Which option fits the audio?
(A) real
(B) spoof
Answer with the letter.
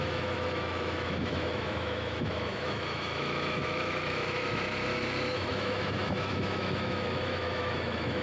B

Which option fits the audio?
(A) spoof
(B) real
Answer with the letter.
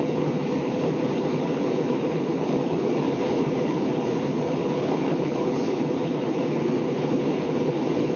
A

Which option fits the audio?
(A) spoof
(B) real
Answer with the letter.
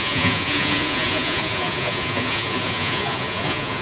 A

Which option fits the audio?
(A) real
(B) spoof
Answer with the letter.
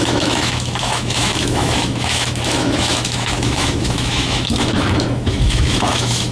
B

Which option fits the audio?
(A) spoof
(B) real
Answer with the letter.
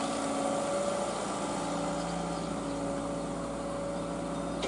B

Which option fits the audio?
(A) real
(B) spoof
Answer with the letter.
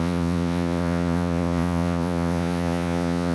B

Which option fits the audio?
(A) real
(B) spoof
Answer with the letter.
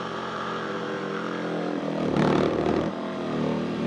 B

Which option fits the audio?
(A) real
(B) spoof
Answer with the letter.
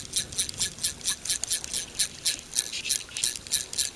A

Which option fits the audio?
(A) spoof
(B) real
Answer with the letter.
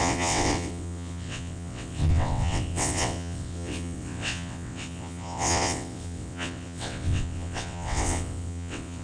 A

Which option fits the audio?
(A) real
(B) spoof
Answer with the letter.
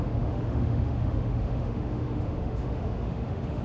B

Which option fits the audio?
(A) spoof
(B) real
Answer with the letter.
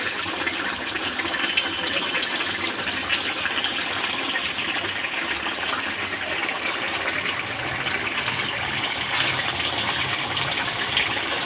A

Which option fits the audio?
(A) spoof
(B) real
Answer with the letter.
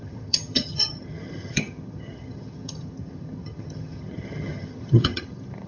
A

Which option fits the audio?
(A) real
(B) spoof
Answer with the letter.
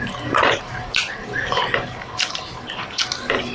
A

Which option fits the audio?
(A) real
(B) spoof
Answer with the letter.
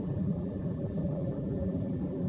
B